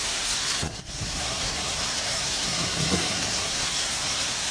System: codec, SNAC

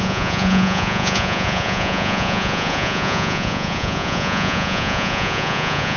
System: vocoder, Vocos